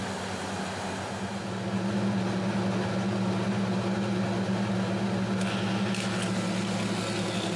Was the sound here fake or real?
real